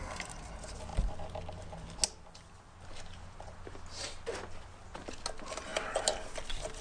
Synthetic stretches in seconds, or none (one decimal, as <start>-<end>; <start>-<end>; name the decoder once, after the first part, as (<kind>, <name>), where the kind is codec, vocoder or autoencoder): none